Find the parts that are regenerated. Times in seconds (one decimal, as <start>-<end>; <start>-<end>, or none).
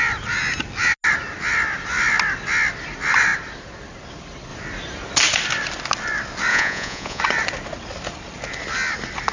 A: 6.5-7.2